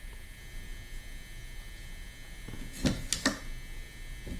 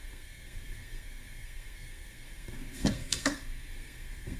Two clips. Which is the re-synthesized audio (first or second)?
second